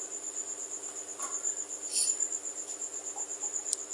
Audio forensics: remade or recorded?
recorded